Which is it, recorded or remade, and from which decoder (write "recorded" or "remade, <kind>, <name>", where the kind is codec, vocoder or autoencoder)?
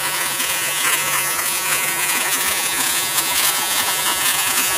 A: remade, vocoder, Vocos